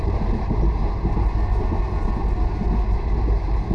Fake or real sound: real